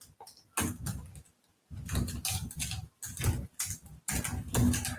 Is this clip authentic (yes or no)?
yes